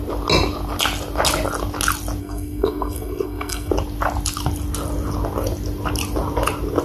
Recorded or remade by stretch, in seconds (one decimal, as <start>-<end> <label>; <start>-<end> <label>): 0.0-2.2 recorded; 2.2-3.7 remade; 3.7-6.8 recorded